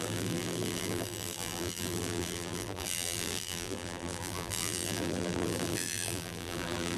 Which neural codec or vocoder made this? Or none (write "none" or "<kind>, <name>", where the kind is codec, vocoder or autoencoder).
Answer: vocoder, BigVGAN v2